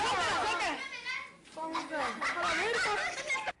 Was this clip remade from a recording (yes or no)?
no